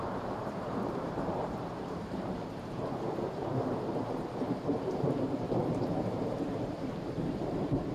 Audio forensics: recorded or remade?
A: remade